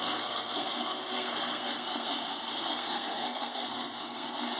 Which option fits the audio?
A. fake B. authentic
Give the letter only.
A